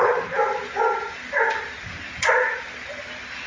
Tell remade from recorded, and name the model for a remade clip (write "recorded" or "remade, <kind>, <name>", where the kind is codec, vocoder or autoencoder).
recorded